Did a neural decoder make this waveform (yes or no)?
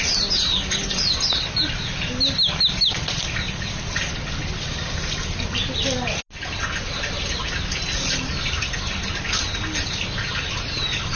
no